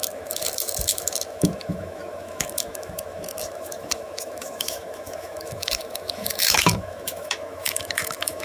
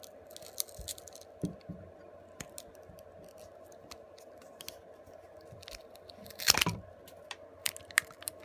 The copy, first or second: first